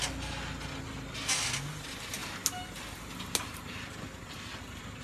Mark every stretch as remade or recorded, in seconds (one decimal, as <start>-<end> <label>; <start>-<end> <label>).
0.0-5.0 recorded